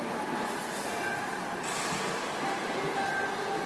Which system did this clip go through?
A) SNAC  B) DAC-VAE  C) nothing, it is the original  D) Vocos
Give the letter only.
C